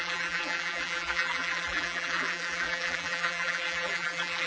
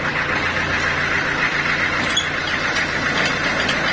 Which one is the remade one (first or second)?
first